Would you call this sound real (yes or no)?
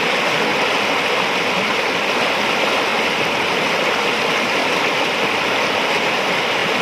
yes